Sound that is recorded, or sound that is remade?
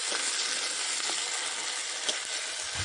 recorded